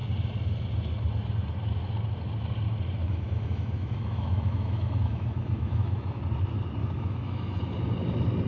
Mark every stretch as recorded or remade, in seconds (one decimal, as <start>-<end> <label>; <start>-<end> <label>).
0.0-3.0 recorded; 3.0-6.2 remade; 6.2-6.8 recorded; 6.8-7.6 remade; 7.6-8.5 recorded